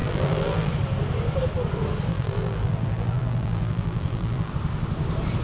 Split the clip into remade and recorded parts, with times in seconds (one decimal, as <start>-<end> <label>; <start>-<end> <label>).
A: 0.0-0.7 remade; 0.7-2.1 recorded; 2.1-4.5 remade; 4.5-5.4 recorded